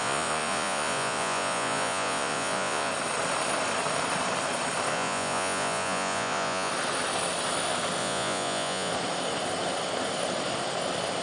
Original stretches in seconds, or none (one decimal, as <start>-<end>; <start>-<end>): 2.9-4.9; 6.7-8.0; 8.9-11.2